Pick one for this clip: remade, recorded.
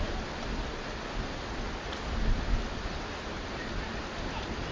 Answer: recorded